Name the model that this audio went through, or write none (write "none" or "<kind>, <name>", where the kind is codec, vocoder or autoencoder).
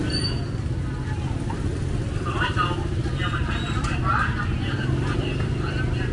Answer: none